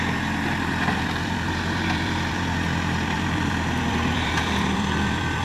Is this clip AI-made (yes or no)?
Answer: yes